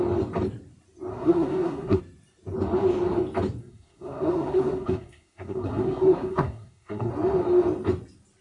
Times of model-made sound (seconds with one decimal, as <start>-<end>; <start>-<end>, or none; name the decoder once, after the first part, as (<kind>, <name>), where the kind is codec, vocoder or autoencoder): 1.1-2.0 (codec, SNAC); 3.6-7.1